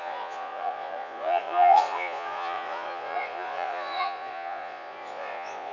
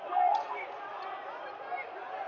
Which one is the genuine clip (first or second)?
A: second